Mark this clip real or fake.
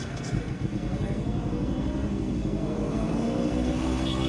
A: fake